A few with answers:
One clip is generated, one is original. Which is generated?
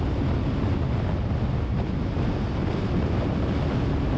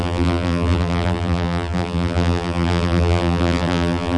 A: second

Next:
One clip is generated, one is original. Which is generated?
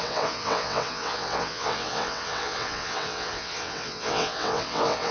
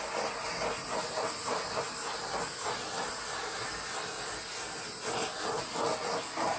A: first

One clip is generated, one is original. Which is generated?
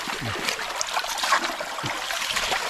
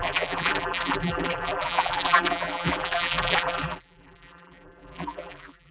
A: second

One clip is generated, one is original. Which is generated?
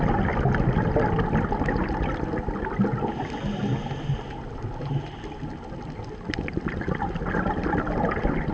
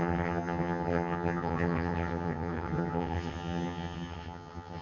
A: second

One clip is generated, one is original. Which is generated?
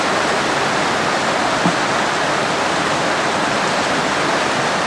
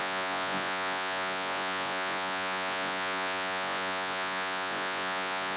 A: second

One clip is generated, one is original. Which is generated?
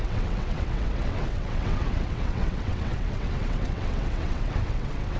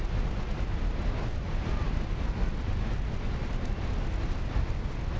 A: first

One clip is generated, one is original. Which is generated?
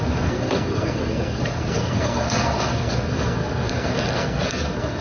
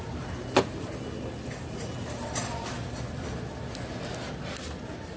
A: first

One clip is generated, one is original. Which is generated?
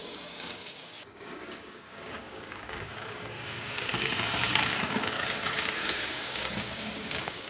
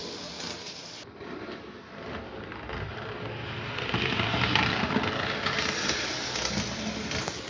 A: first